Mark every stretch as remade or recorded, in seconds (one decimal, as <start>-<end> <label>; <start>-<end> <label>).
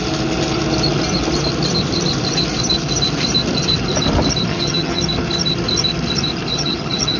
0.0-4.5 recorded; 4.5-5.0 remade; 5.0-6.5 recorded; 6.5-7.2 remade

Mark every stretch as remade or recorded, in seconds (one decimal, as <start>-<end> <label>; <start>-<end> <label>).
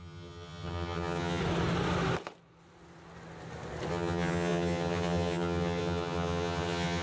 0.0-1.4 remade; 1.4-3.9 recorded; 3.9-7.0 remade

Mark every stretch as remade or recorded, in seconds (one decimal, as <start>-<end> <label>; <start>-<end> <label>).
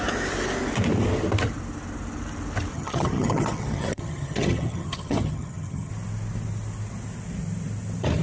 0.0-2.7 recorded; 2.7-5.9 remade; 5.9-8.2 recorded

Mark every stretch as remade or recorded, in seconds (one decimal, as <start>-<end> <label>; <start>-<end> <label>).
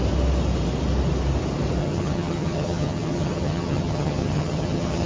0.0-1.8 recorded; 1.8-5.1 remade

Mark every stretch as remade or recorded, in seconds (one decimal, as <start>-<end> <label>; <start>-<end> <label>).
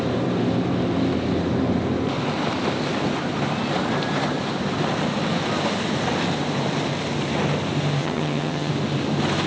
0.0-8.0 recorded; 8.0-8.7 remade; 8.7-9.5 recorded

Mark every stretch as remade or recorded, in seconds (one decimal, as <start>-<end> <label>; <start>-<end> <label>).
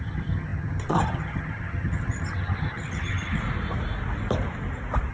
0.0-3.4 remade; 3.4-5.1 recorded